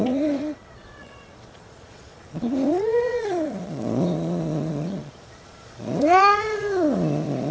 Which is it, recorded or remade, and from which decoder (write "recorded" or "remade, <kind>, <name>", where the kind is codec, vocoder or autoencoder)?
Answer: remade, vocoder, Vocos